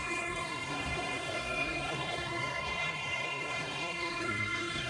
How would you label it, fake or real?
fake